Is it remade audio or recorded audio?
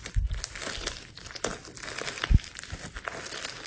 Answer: recorded